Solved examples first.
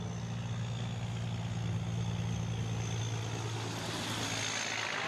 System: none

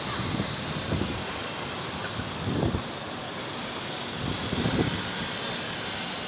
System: none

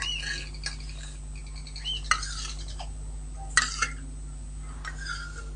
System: none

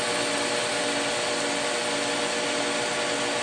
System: none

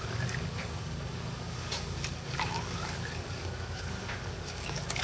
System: codec, DAC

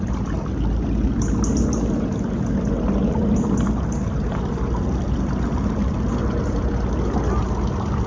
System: none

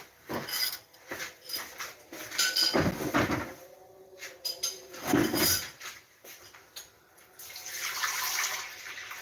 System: none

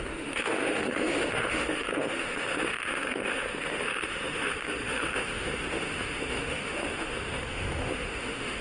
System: autoencoder, DAC-VAE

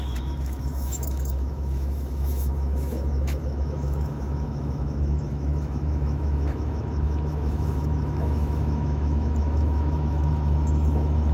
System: autoencoder, DAC-VAE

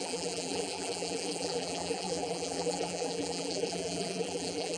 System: vocoder, BigVGAN v2